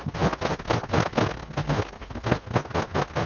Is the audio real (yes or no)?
yes